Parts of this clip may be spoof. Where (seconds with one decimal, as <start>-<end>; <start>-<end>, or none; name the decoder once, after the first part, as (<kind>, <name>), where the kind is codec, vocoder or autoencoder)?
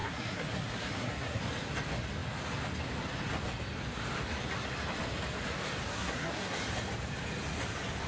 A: 0.0-1.4 (codec, SNAC); 5.9-6.6